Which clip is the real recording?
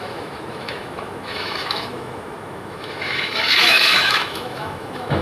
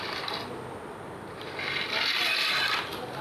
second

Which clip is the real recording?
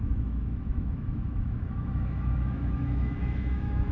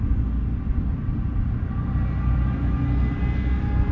second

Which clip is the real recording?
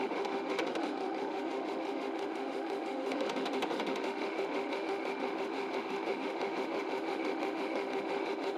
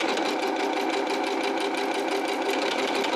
second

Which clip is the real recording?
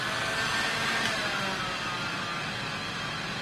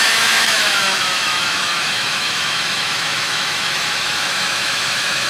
first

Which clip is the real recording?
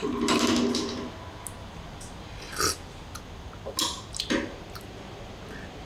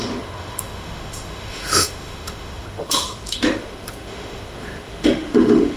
first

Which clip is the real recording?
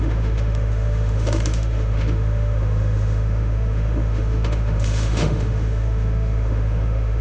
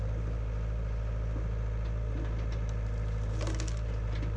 second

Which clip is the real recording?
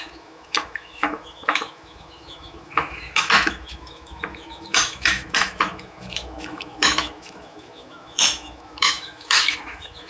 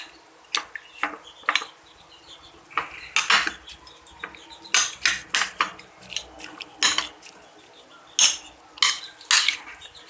second